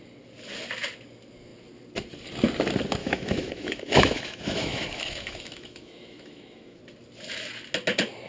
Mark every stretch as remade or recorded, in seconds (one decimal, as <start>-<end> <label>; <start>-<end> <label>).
0.0-3.0 recorded; 3.0-6.8 remade; 6.8-8.3 recorded